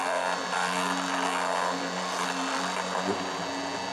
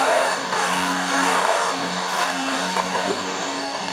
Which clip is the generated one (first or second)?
second